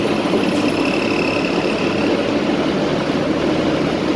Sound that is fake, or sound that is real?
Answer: real